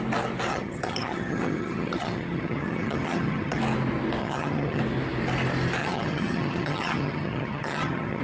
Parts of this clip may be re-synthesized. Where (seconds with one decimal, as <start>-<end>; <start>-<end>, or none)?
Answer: 0.5-3.6; 4.2-4.8; 5.8-8.2